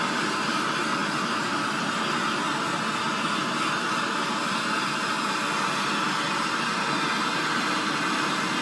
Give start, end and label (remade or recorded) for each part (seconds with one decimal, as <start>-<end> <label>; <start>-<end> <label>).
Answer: 0.0-8.6 recorded